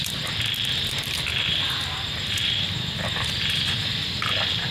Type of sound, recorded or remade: remade